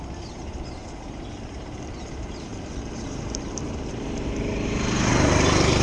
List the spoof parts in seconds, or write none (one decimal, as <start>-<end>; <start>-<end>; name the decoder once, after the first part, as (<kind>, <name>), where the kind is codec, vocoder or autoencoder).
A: 0.0-5.8 (vocoder, BigVGAN v2)